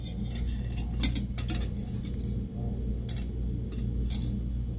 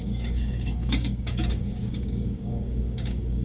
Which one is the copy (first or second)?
second